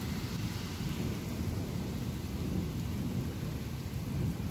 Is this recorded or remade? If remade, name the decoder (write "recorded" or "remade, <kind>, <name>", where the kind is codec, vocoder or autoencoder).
recorded